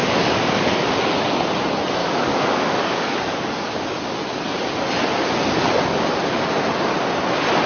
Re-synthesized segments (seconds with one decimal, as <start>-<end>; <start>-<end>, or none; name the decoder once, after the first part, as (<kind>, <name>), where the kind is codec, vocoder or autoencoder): 0.0-0.7 (codec, DAC); 2.0-3.4